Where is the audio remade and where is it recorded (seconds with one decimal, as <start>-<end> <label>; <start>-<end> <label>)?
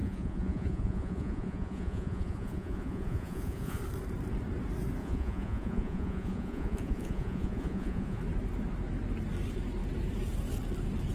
0.0-3.8 remade; 3.8-5.0 recorded; 5.0-8.2 remade; 8.2-11.1 recorded